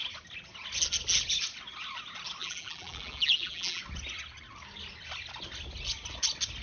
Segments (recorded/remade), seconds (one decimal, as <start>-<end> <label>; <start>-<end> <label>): 0.0-2.4 recorded; 2.4-3.8 remade; 3.8-6.6 recorded